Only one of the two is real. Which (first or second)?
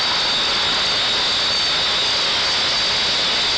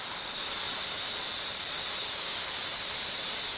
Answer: first